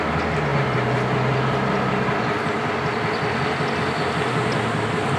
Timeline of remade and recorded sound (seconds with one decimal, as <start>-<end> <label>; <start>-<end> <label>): 0.0-5.2 recorded